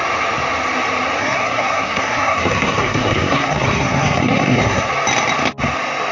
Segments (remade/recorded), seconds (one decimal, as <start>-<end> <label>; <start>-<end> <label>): 0.0-1.2 recorded; 1.2-4.9 remade; 4.9-6.1 recorded